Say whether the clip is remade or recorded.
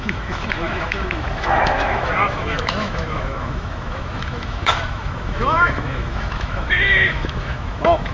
remade